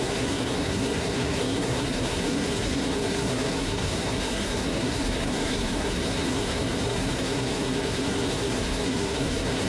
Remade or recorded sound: remade